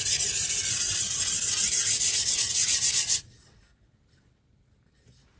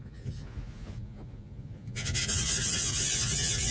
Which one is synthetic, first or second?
second